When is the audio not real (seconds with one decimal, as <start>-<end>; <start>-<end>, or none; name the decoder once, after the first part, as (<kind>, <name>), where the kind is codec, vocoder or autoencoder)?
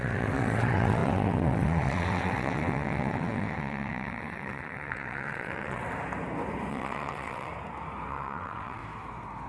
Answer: 0.0-5.8 (vocoder, WaveNeXt); 6.7-7.5; 8.1-8.8